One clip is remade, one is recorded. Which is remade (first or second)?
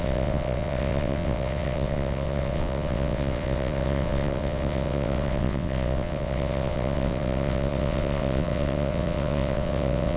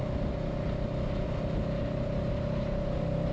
first